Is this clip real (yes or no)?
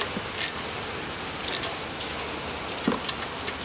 yes